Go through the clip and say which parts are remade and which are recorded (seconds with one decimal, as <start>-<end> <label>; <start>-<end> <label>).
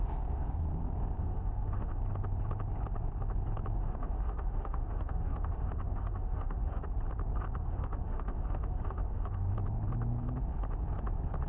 0.0-1.2 recorded; 1.2-2.0 remade; 2.0-3.8 recorded; 3.8-6.8 remade; 6.8-7.6 recorded; 7.6-9.5 remade; 9.5-11.5 recorded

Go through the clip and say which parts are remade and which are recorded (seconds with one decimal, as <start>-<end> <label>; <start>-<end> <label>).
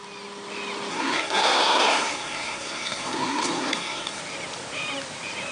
0.0-0.9 recorded; 0.9-4.2 remade; 4.2-5.5 recorded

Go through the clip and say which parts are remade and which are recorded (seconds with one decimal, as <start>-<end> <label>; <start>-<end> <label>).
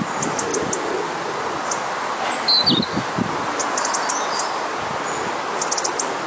0.0-6.3 recorded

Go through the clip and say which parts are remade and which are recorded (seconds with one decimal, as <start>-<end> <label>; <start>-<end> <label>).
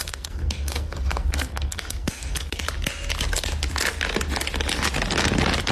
0.0-2.6 remade; 2.6-5.7 recorded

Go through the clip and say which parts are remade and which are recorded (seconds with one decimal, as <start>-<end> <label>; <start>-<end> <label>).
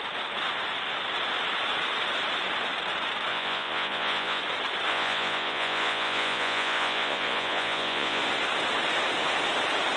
0.0-3.3 recorded; 3.3-4.4 remade; 4.4-4.9 recorded; 4.9-8.2 remade; 8.2-10.0 recorded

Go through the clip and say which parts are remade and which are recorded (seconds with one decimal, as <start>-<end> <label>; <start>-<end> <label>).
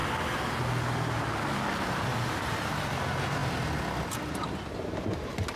0.0-2.1 recorded; 2.1-2.7 remade; 2.7-5.6 recorded